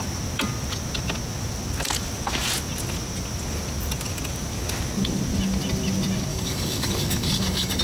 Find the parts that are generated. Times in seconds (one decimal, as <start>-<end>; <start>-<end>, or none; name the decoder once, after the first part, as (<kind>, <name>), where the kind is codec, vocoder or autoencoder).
6.3-7.8 (codec, DAC)